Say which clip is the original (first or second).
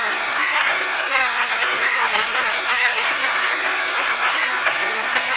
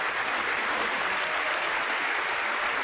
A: second